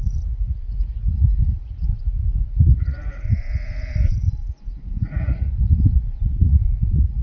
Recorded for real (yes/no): no